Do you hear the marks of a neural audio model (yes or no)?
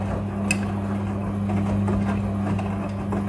no